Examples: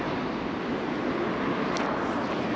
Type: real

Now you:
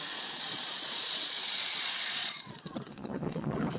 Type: fake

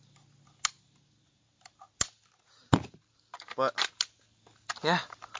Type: real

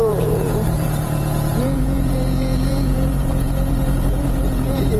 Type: fake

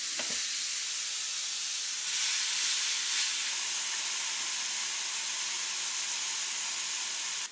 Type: real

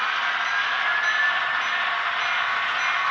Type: real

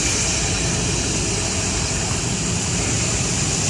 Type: real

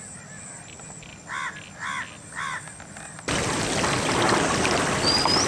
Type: real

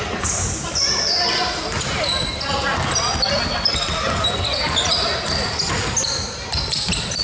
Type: real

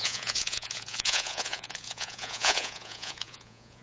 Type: fake